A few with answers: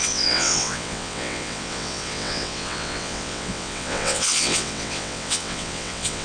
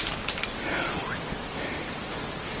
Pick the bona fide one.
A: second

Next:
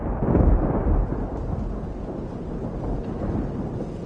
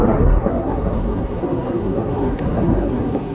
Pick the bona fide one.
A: first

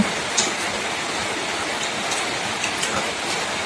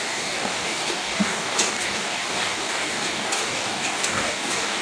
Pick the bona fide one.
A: first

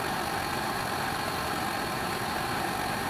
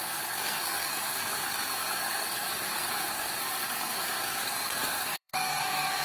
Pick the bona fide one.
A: first